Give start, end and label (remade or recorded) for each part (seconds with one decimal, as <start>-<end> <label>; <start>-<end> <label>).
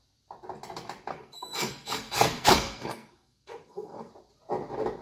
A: 0.0-1.1 recorded; 1.1-4.1 remade; 4.1-5.0 recorded